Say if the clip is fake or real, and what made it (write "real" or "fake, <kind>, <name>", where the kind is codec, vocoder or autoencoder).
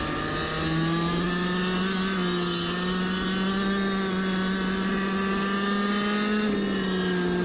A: real